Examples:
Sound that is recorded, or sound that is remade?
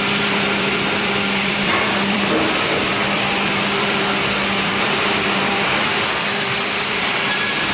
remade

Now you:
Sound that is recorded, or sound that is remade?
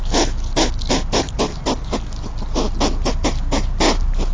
recorded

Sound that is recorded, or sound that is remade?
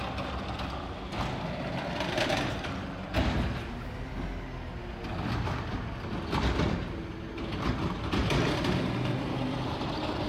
recorded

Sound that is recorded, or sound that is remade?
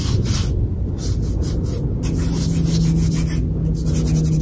recorded